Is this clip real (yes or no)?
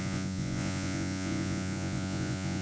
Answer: no